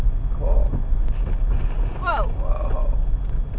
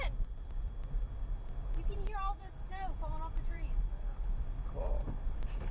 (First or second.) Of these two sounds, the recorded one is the first